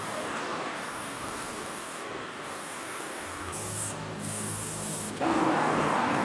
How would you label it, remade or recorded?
remade